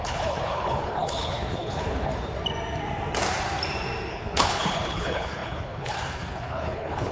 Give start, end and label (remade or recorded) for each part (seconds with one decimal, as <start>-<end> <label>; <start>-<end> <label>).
0.0-2.1 remade; 2.1-4.1 recorded; 4.1-7.1 remade